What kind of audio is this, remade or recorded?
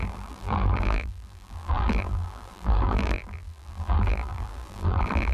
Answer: remade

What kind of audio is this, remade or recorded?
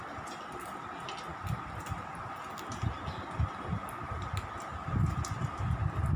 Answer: recorded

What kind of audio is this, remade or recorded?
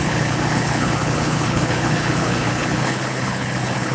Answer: remade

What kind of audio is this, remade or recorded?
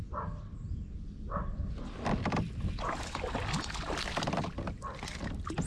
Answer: recorded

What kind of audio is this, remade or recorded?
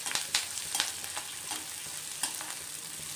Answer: recorded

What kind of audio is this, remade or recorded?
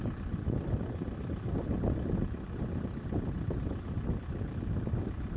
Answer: recorded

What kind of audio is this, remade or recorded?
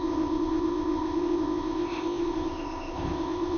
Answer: remade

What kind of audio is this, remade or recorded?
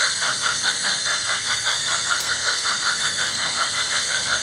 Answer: remade